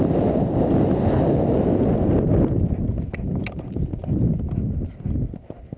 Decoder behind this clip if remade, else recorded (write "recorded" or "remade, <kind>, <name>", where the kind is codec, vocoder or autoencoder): recorded